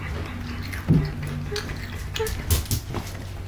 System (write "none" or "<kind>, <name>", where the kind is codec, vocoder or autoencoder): none